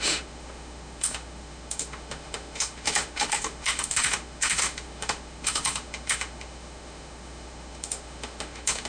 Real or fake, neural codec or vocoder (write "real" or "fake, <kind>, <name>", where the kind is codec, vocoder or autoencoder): fake, autoencoder, DAC-VAE